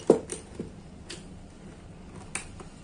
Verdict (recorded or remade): recorded